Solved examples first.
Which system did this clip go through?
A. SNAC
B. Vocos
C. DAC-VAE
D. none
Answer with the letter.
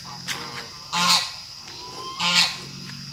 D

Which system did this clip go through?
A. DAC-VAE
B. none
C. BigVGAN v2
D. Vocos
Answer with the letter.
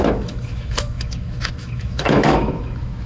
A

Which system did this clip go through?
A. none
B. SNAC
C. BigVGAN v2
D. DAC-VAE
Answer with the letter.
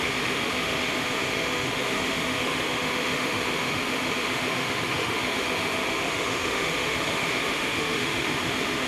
D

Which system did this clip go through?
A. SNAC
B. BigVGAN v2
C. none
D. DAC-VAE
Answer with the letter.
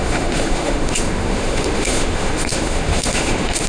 D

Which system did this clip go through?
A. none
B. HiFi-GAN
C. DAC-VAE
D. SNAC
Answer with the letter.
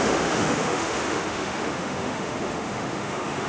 C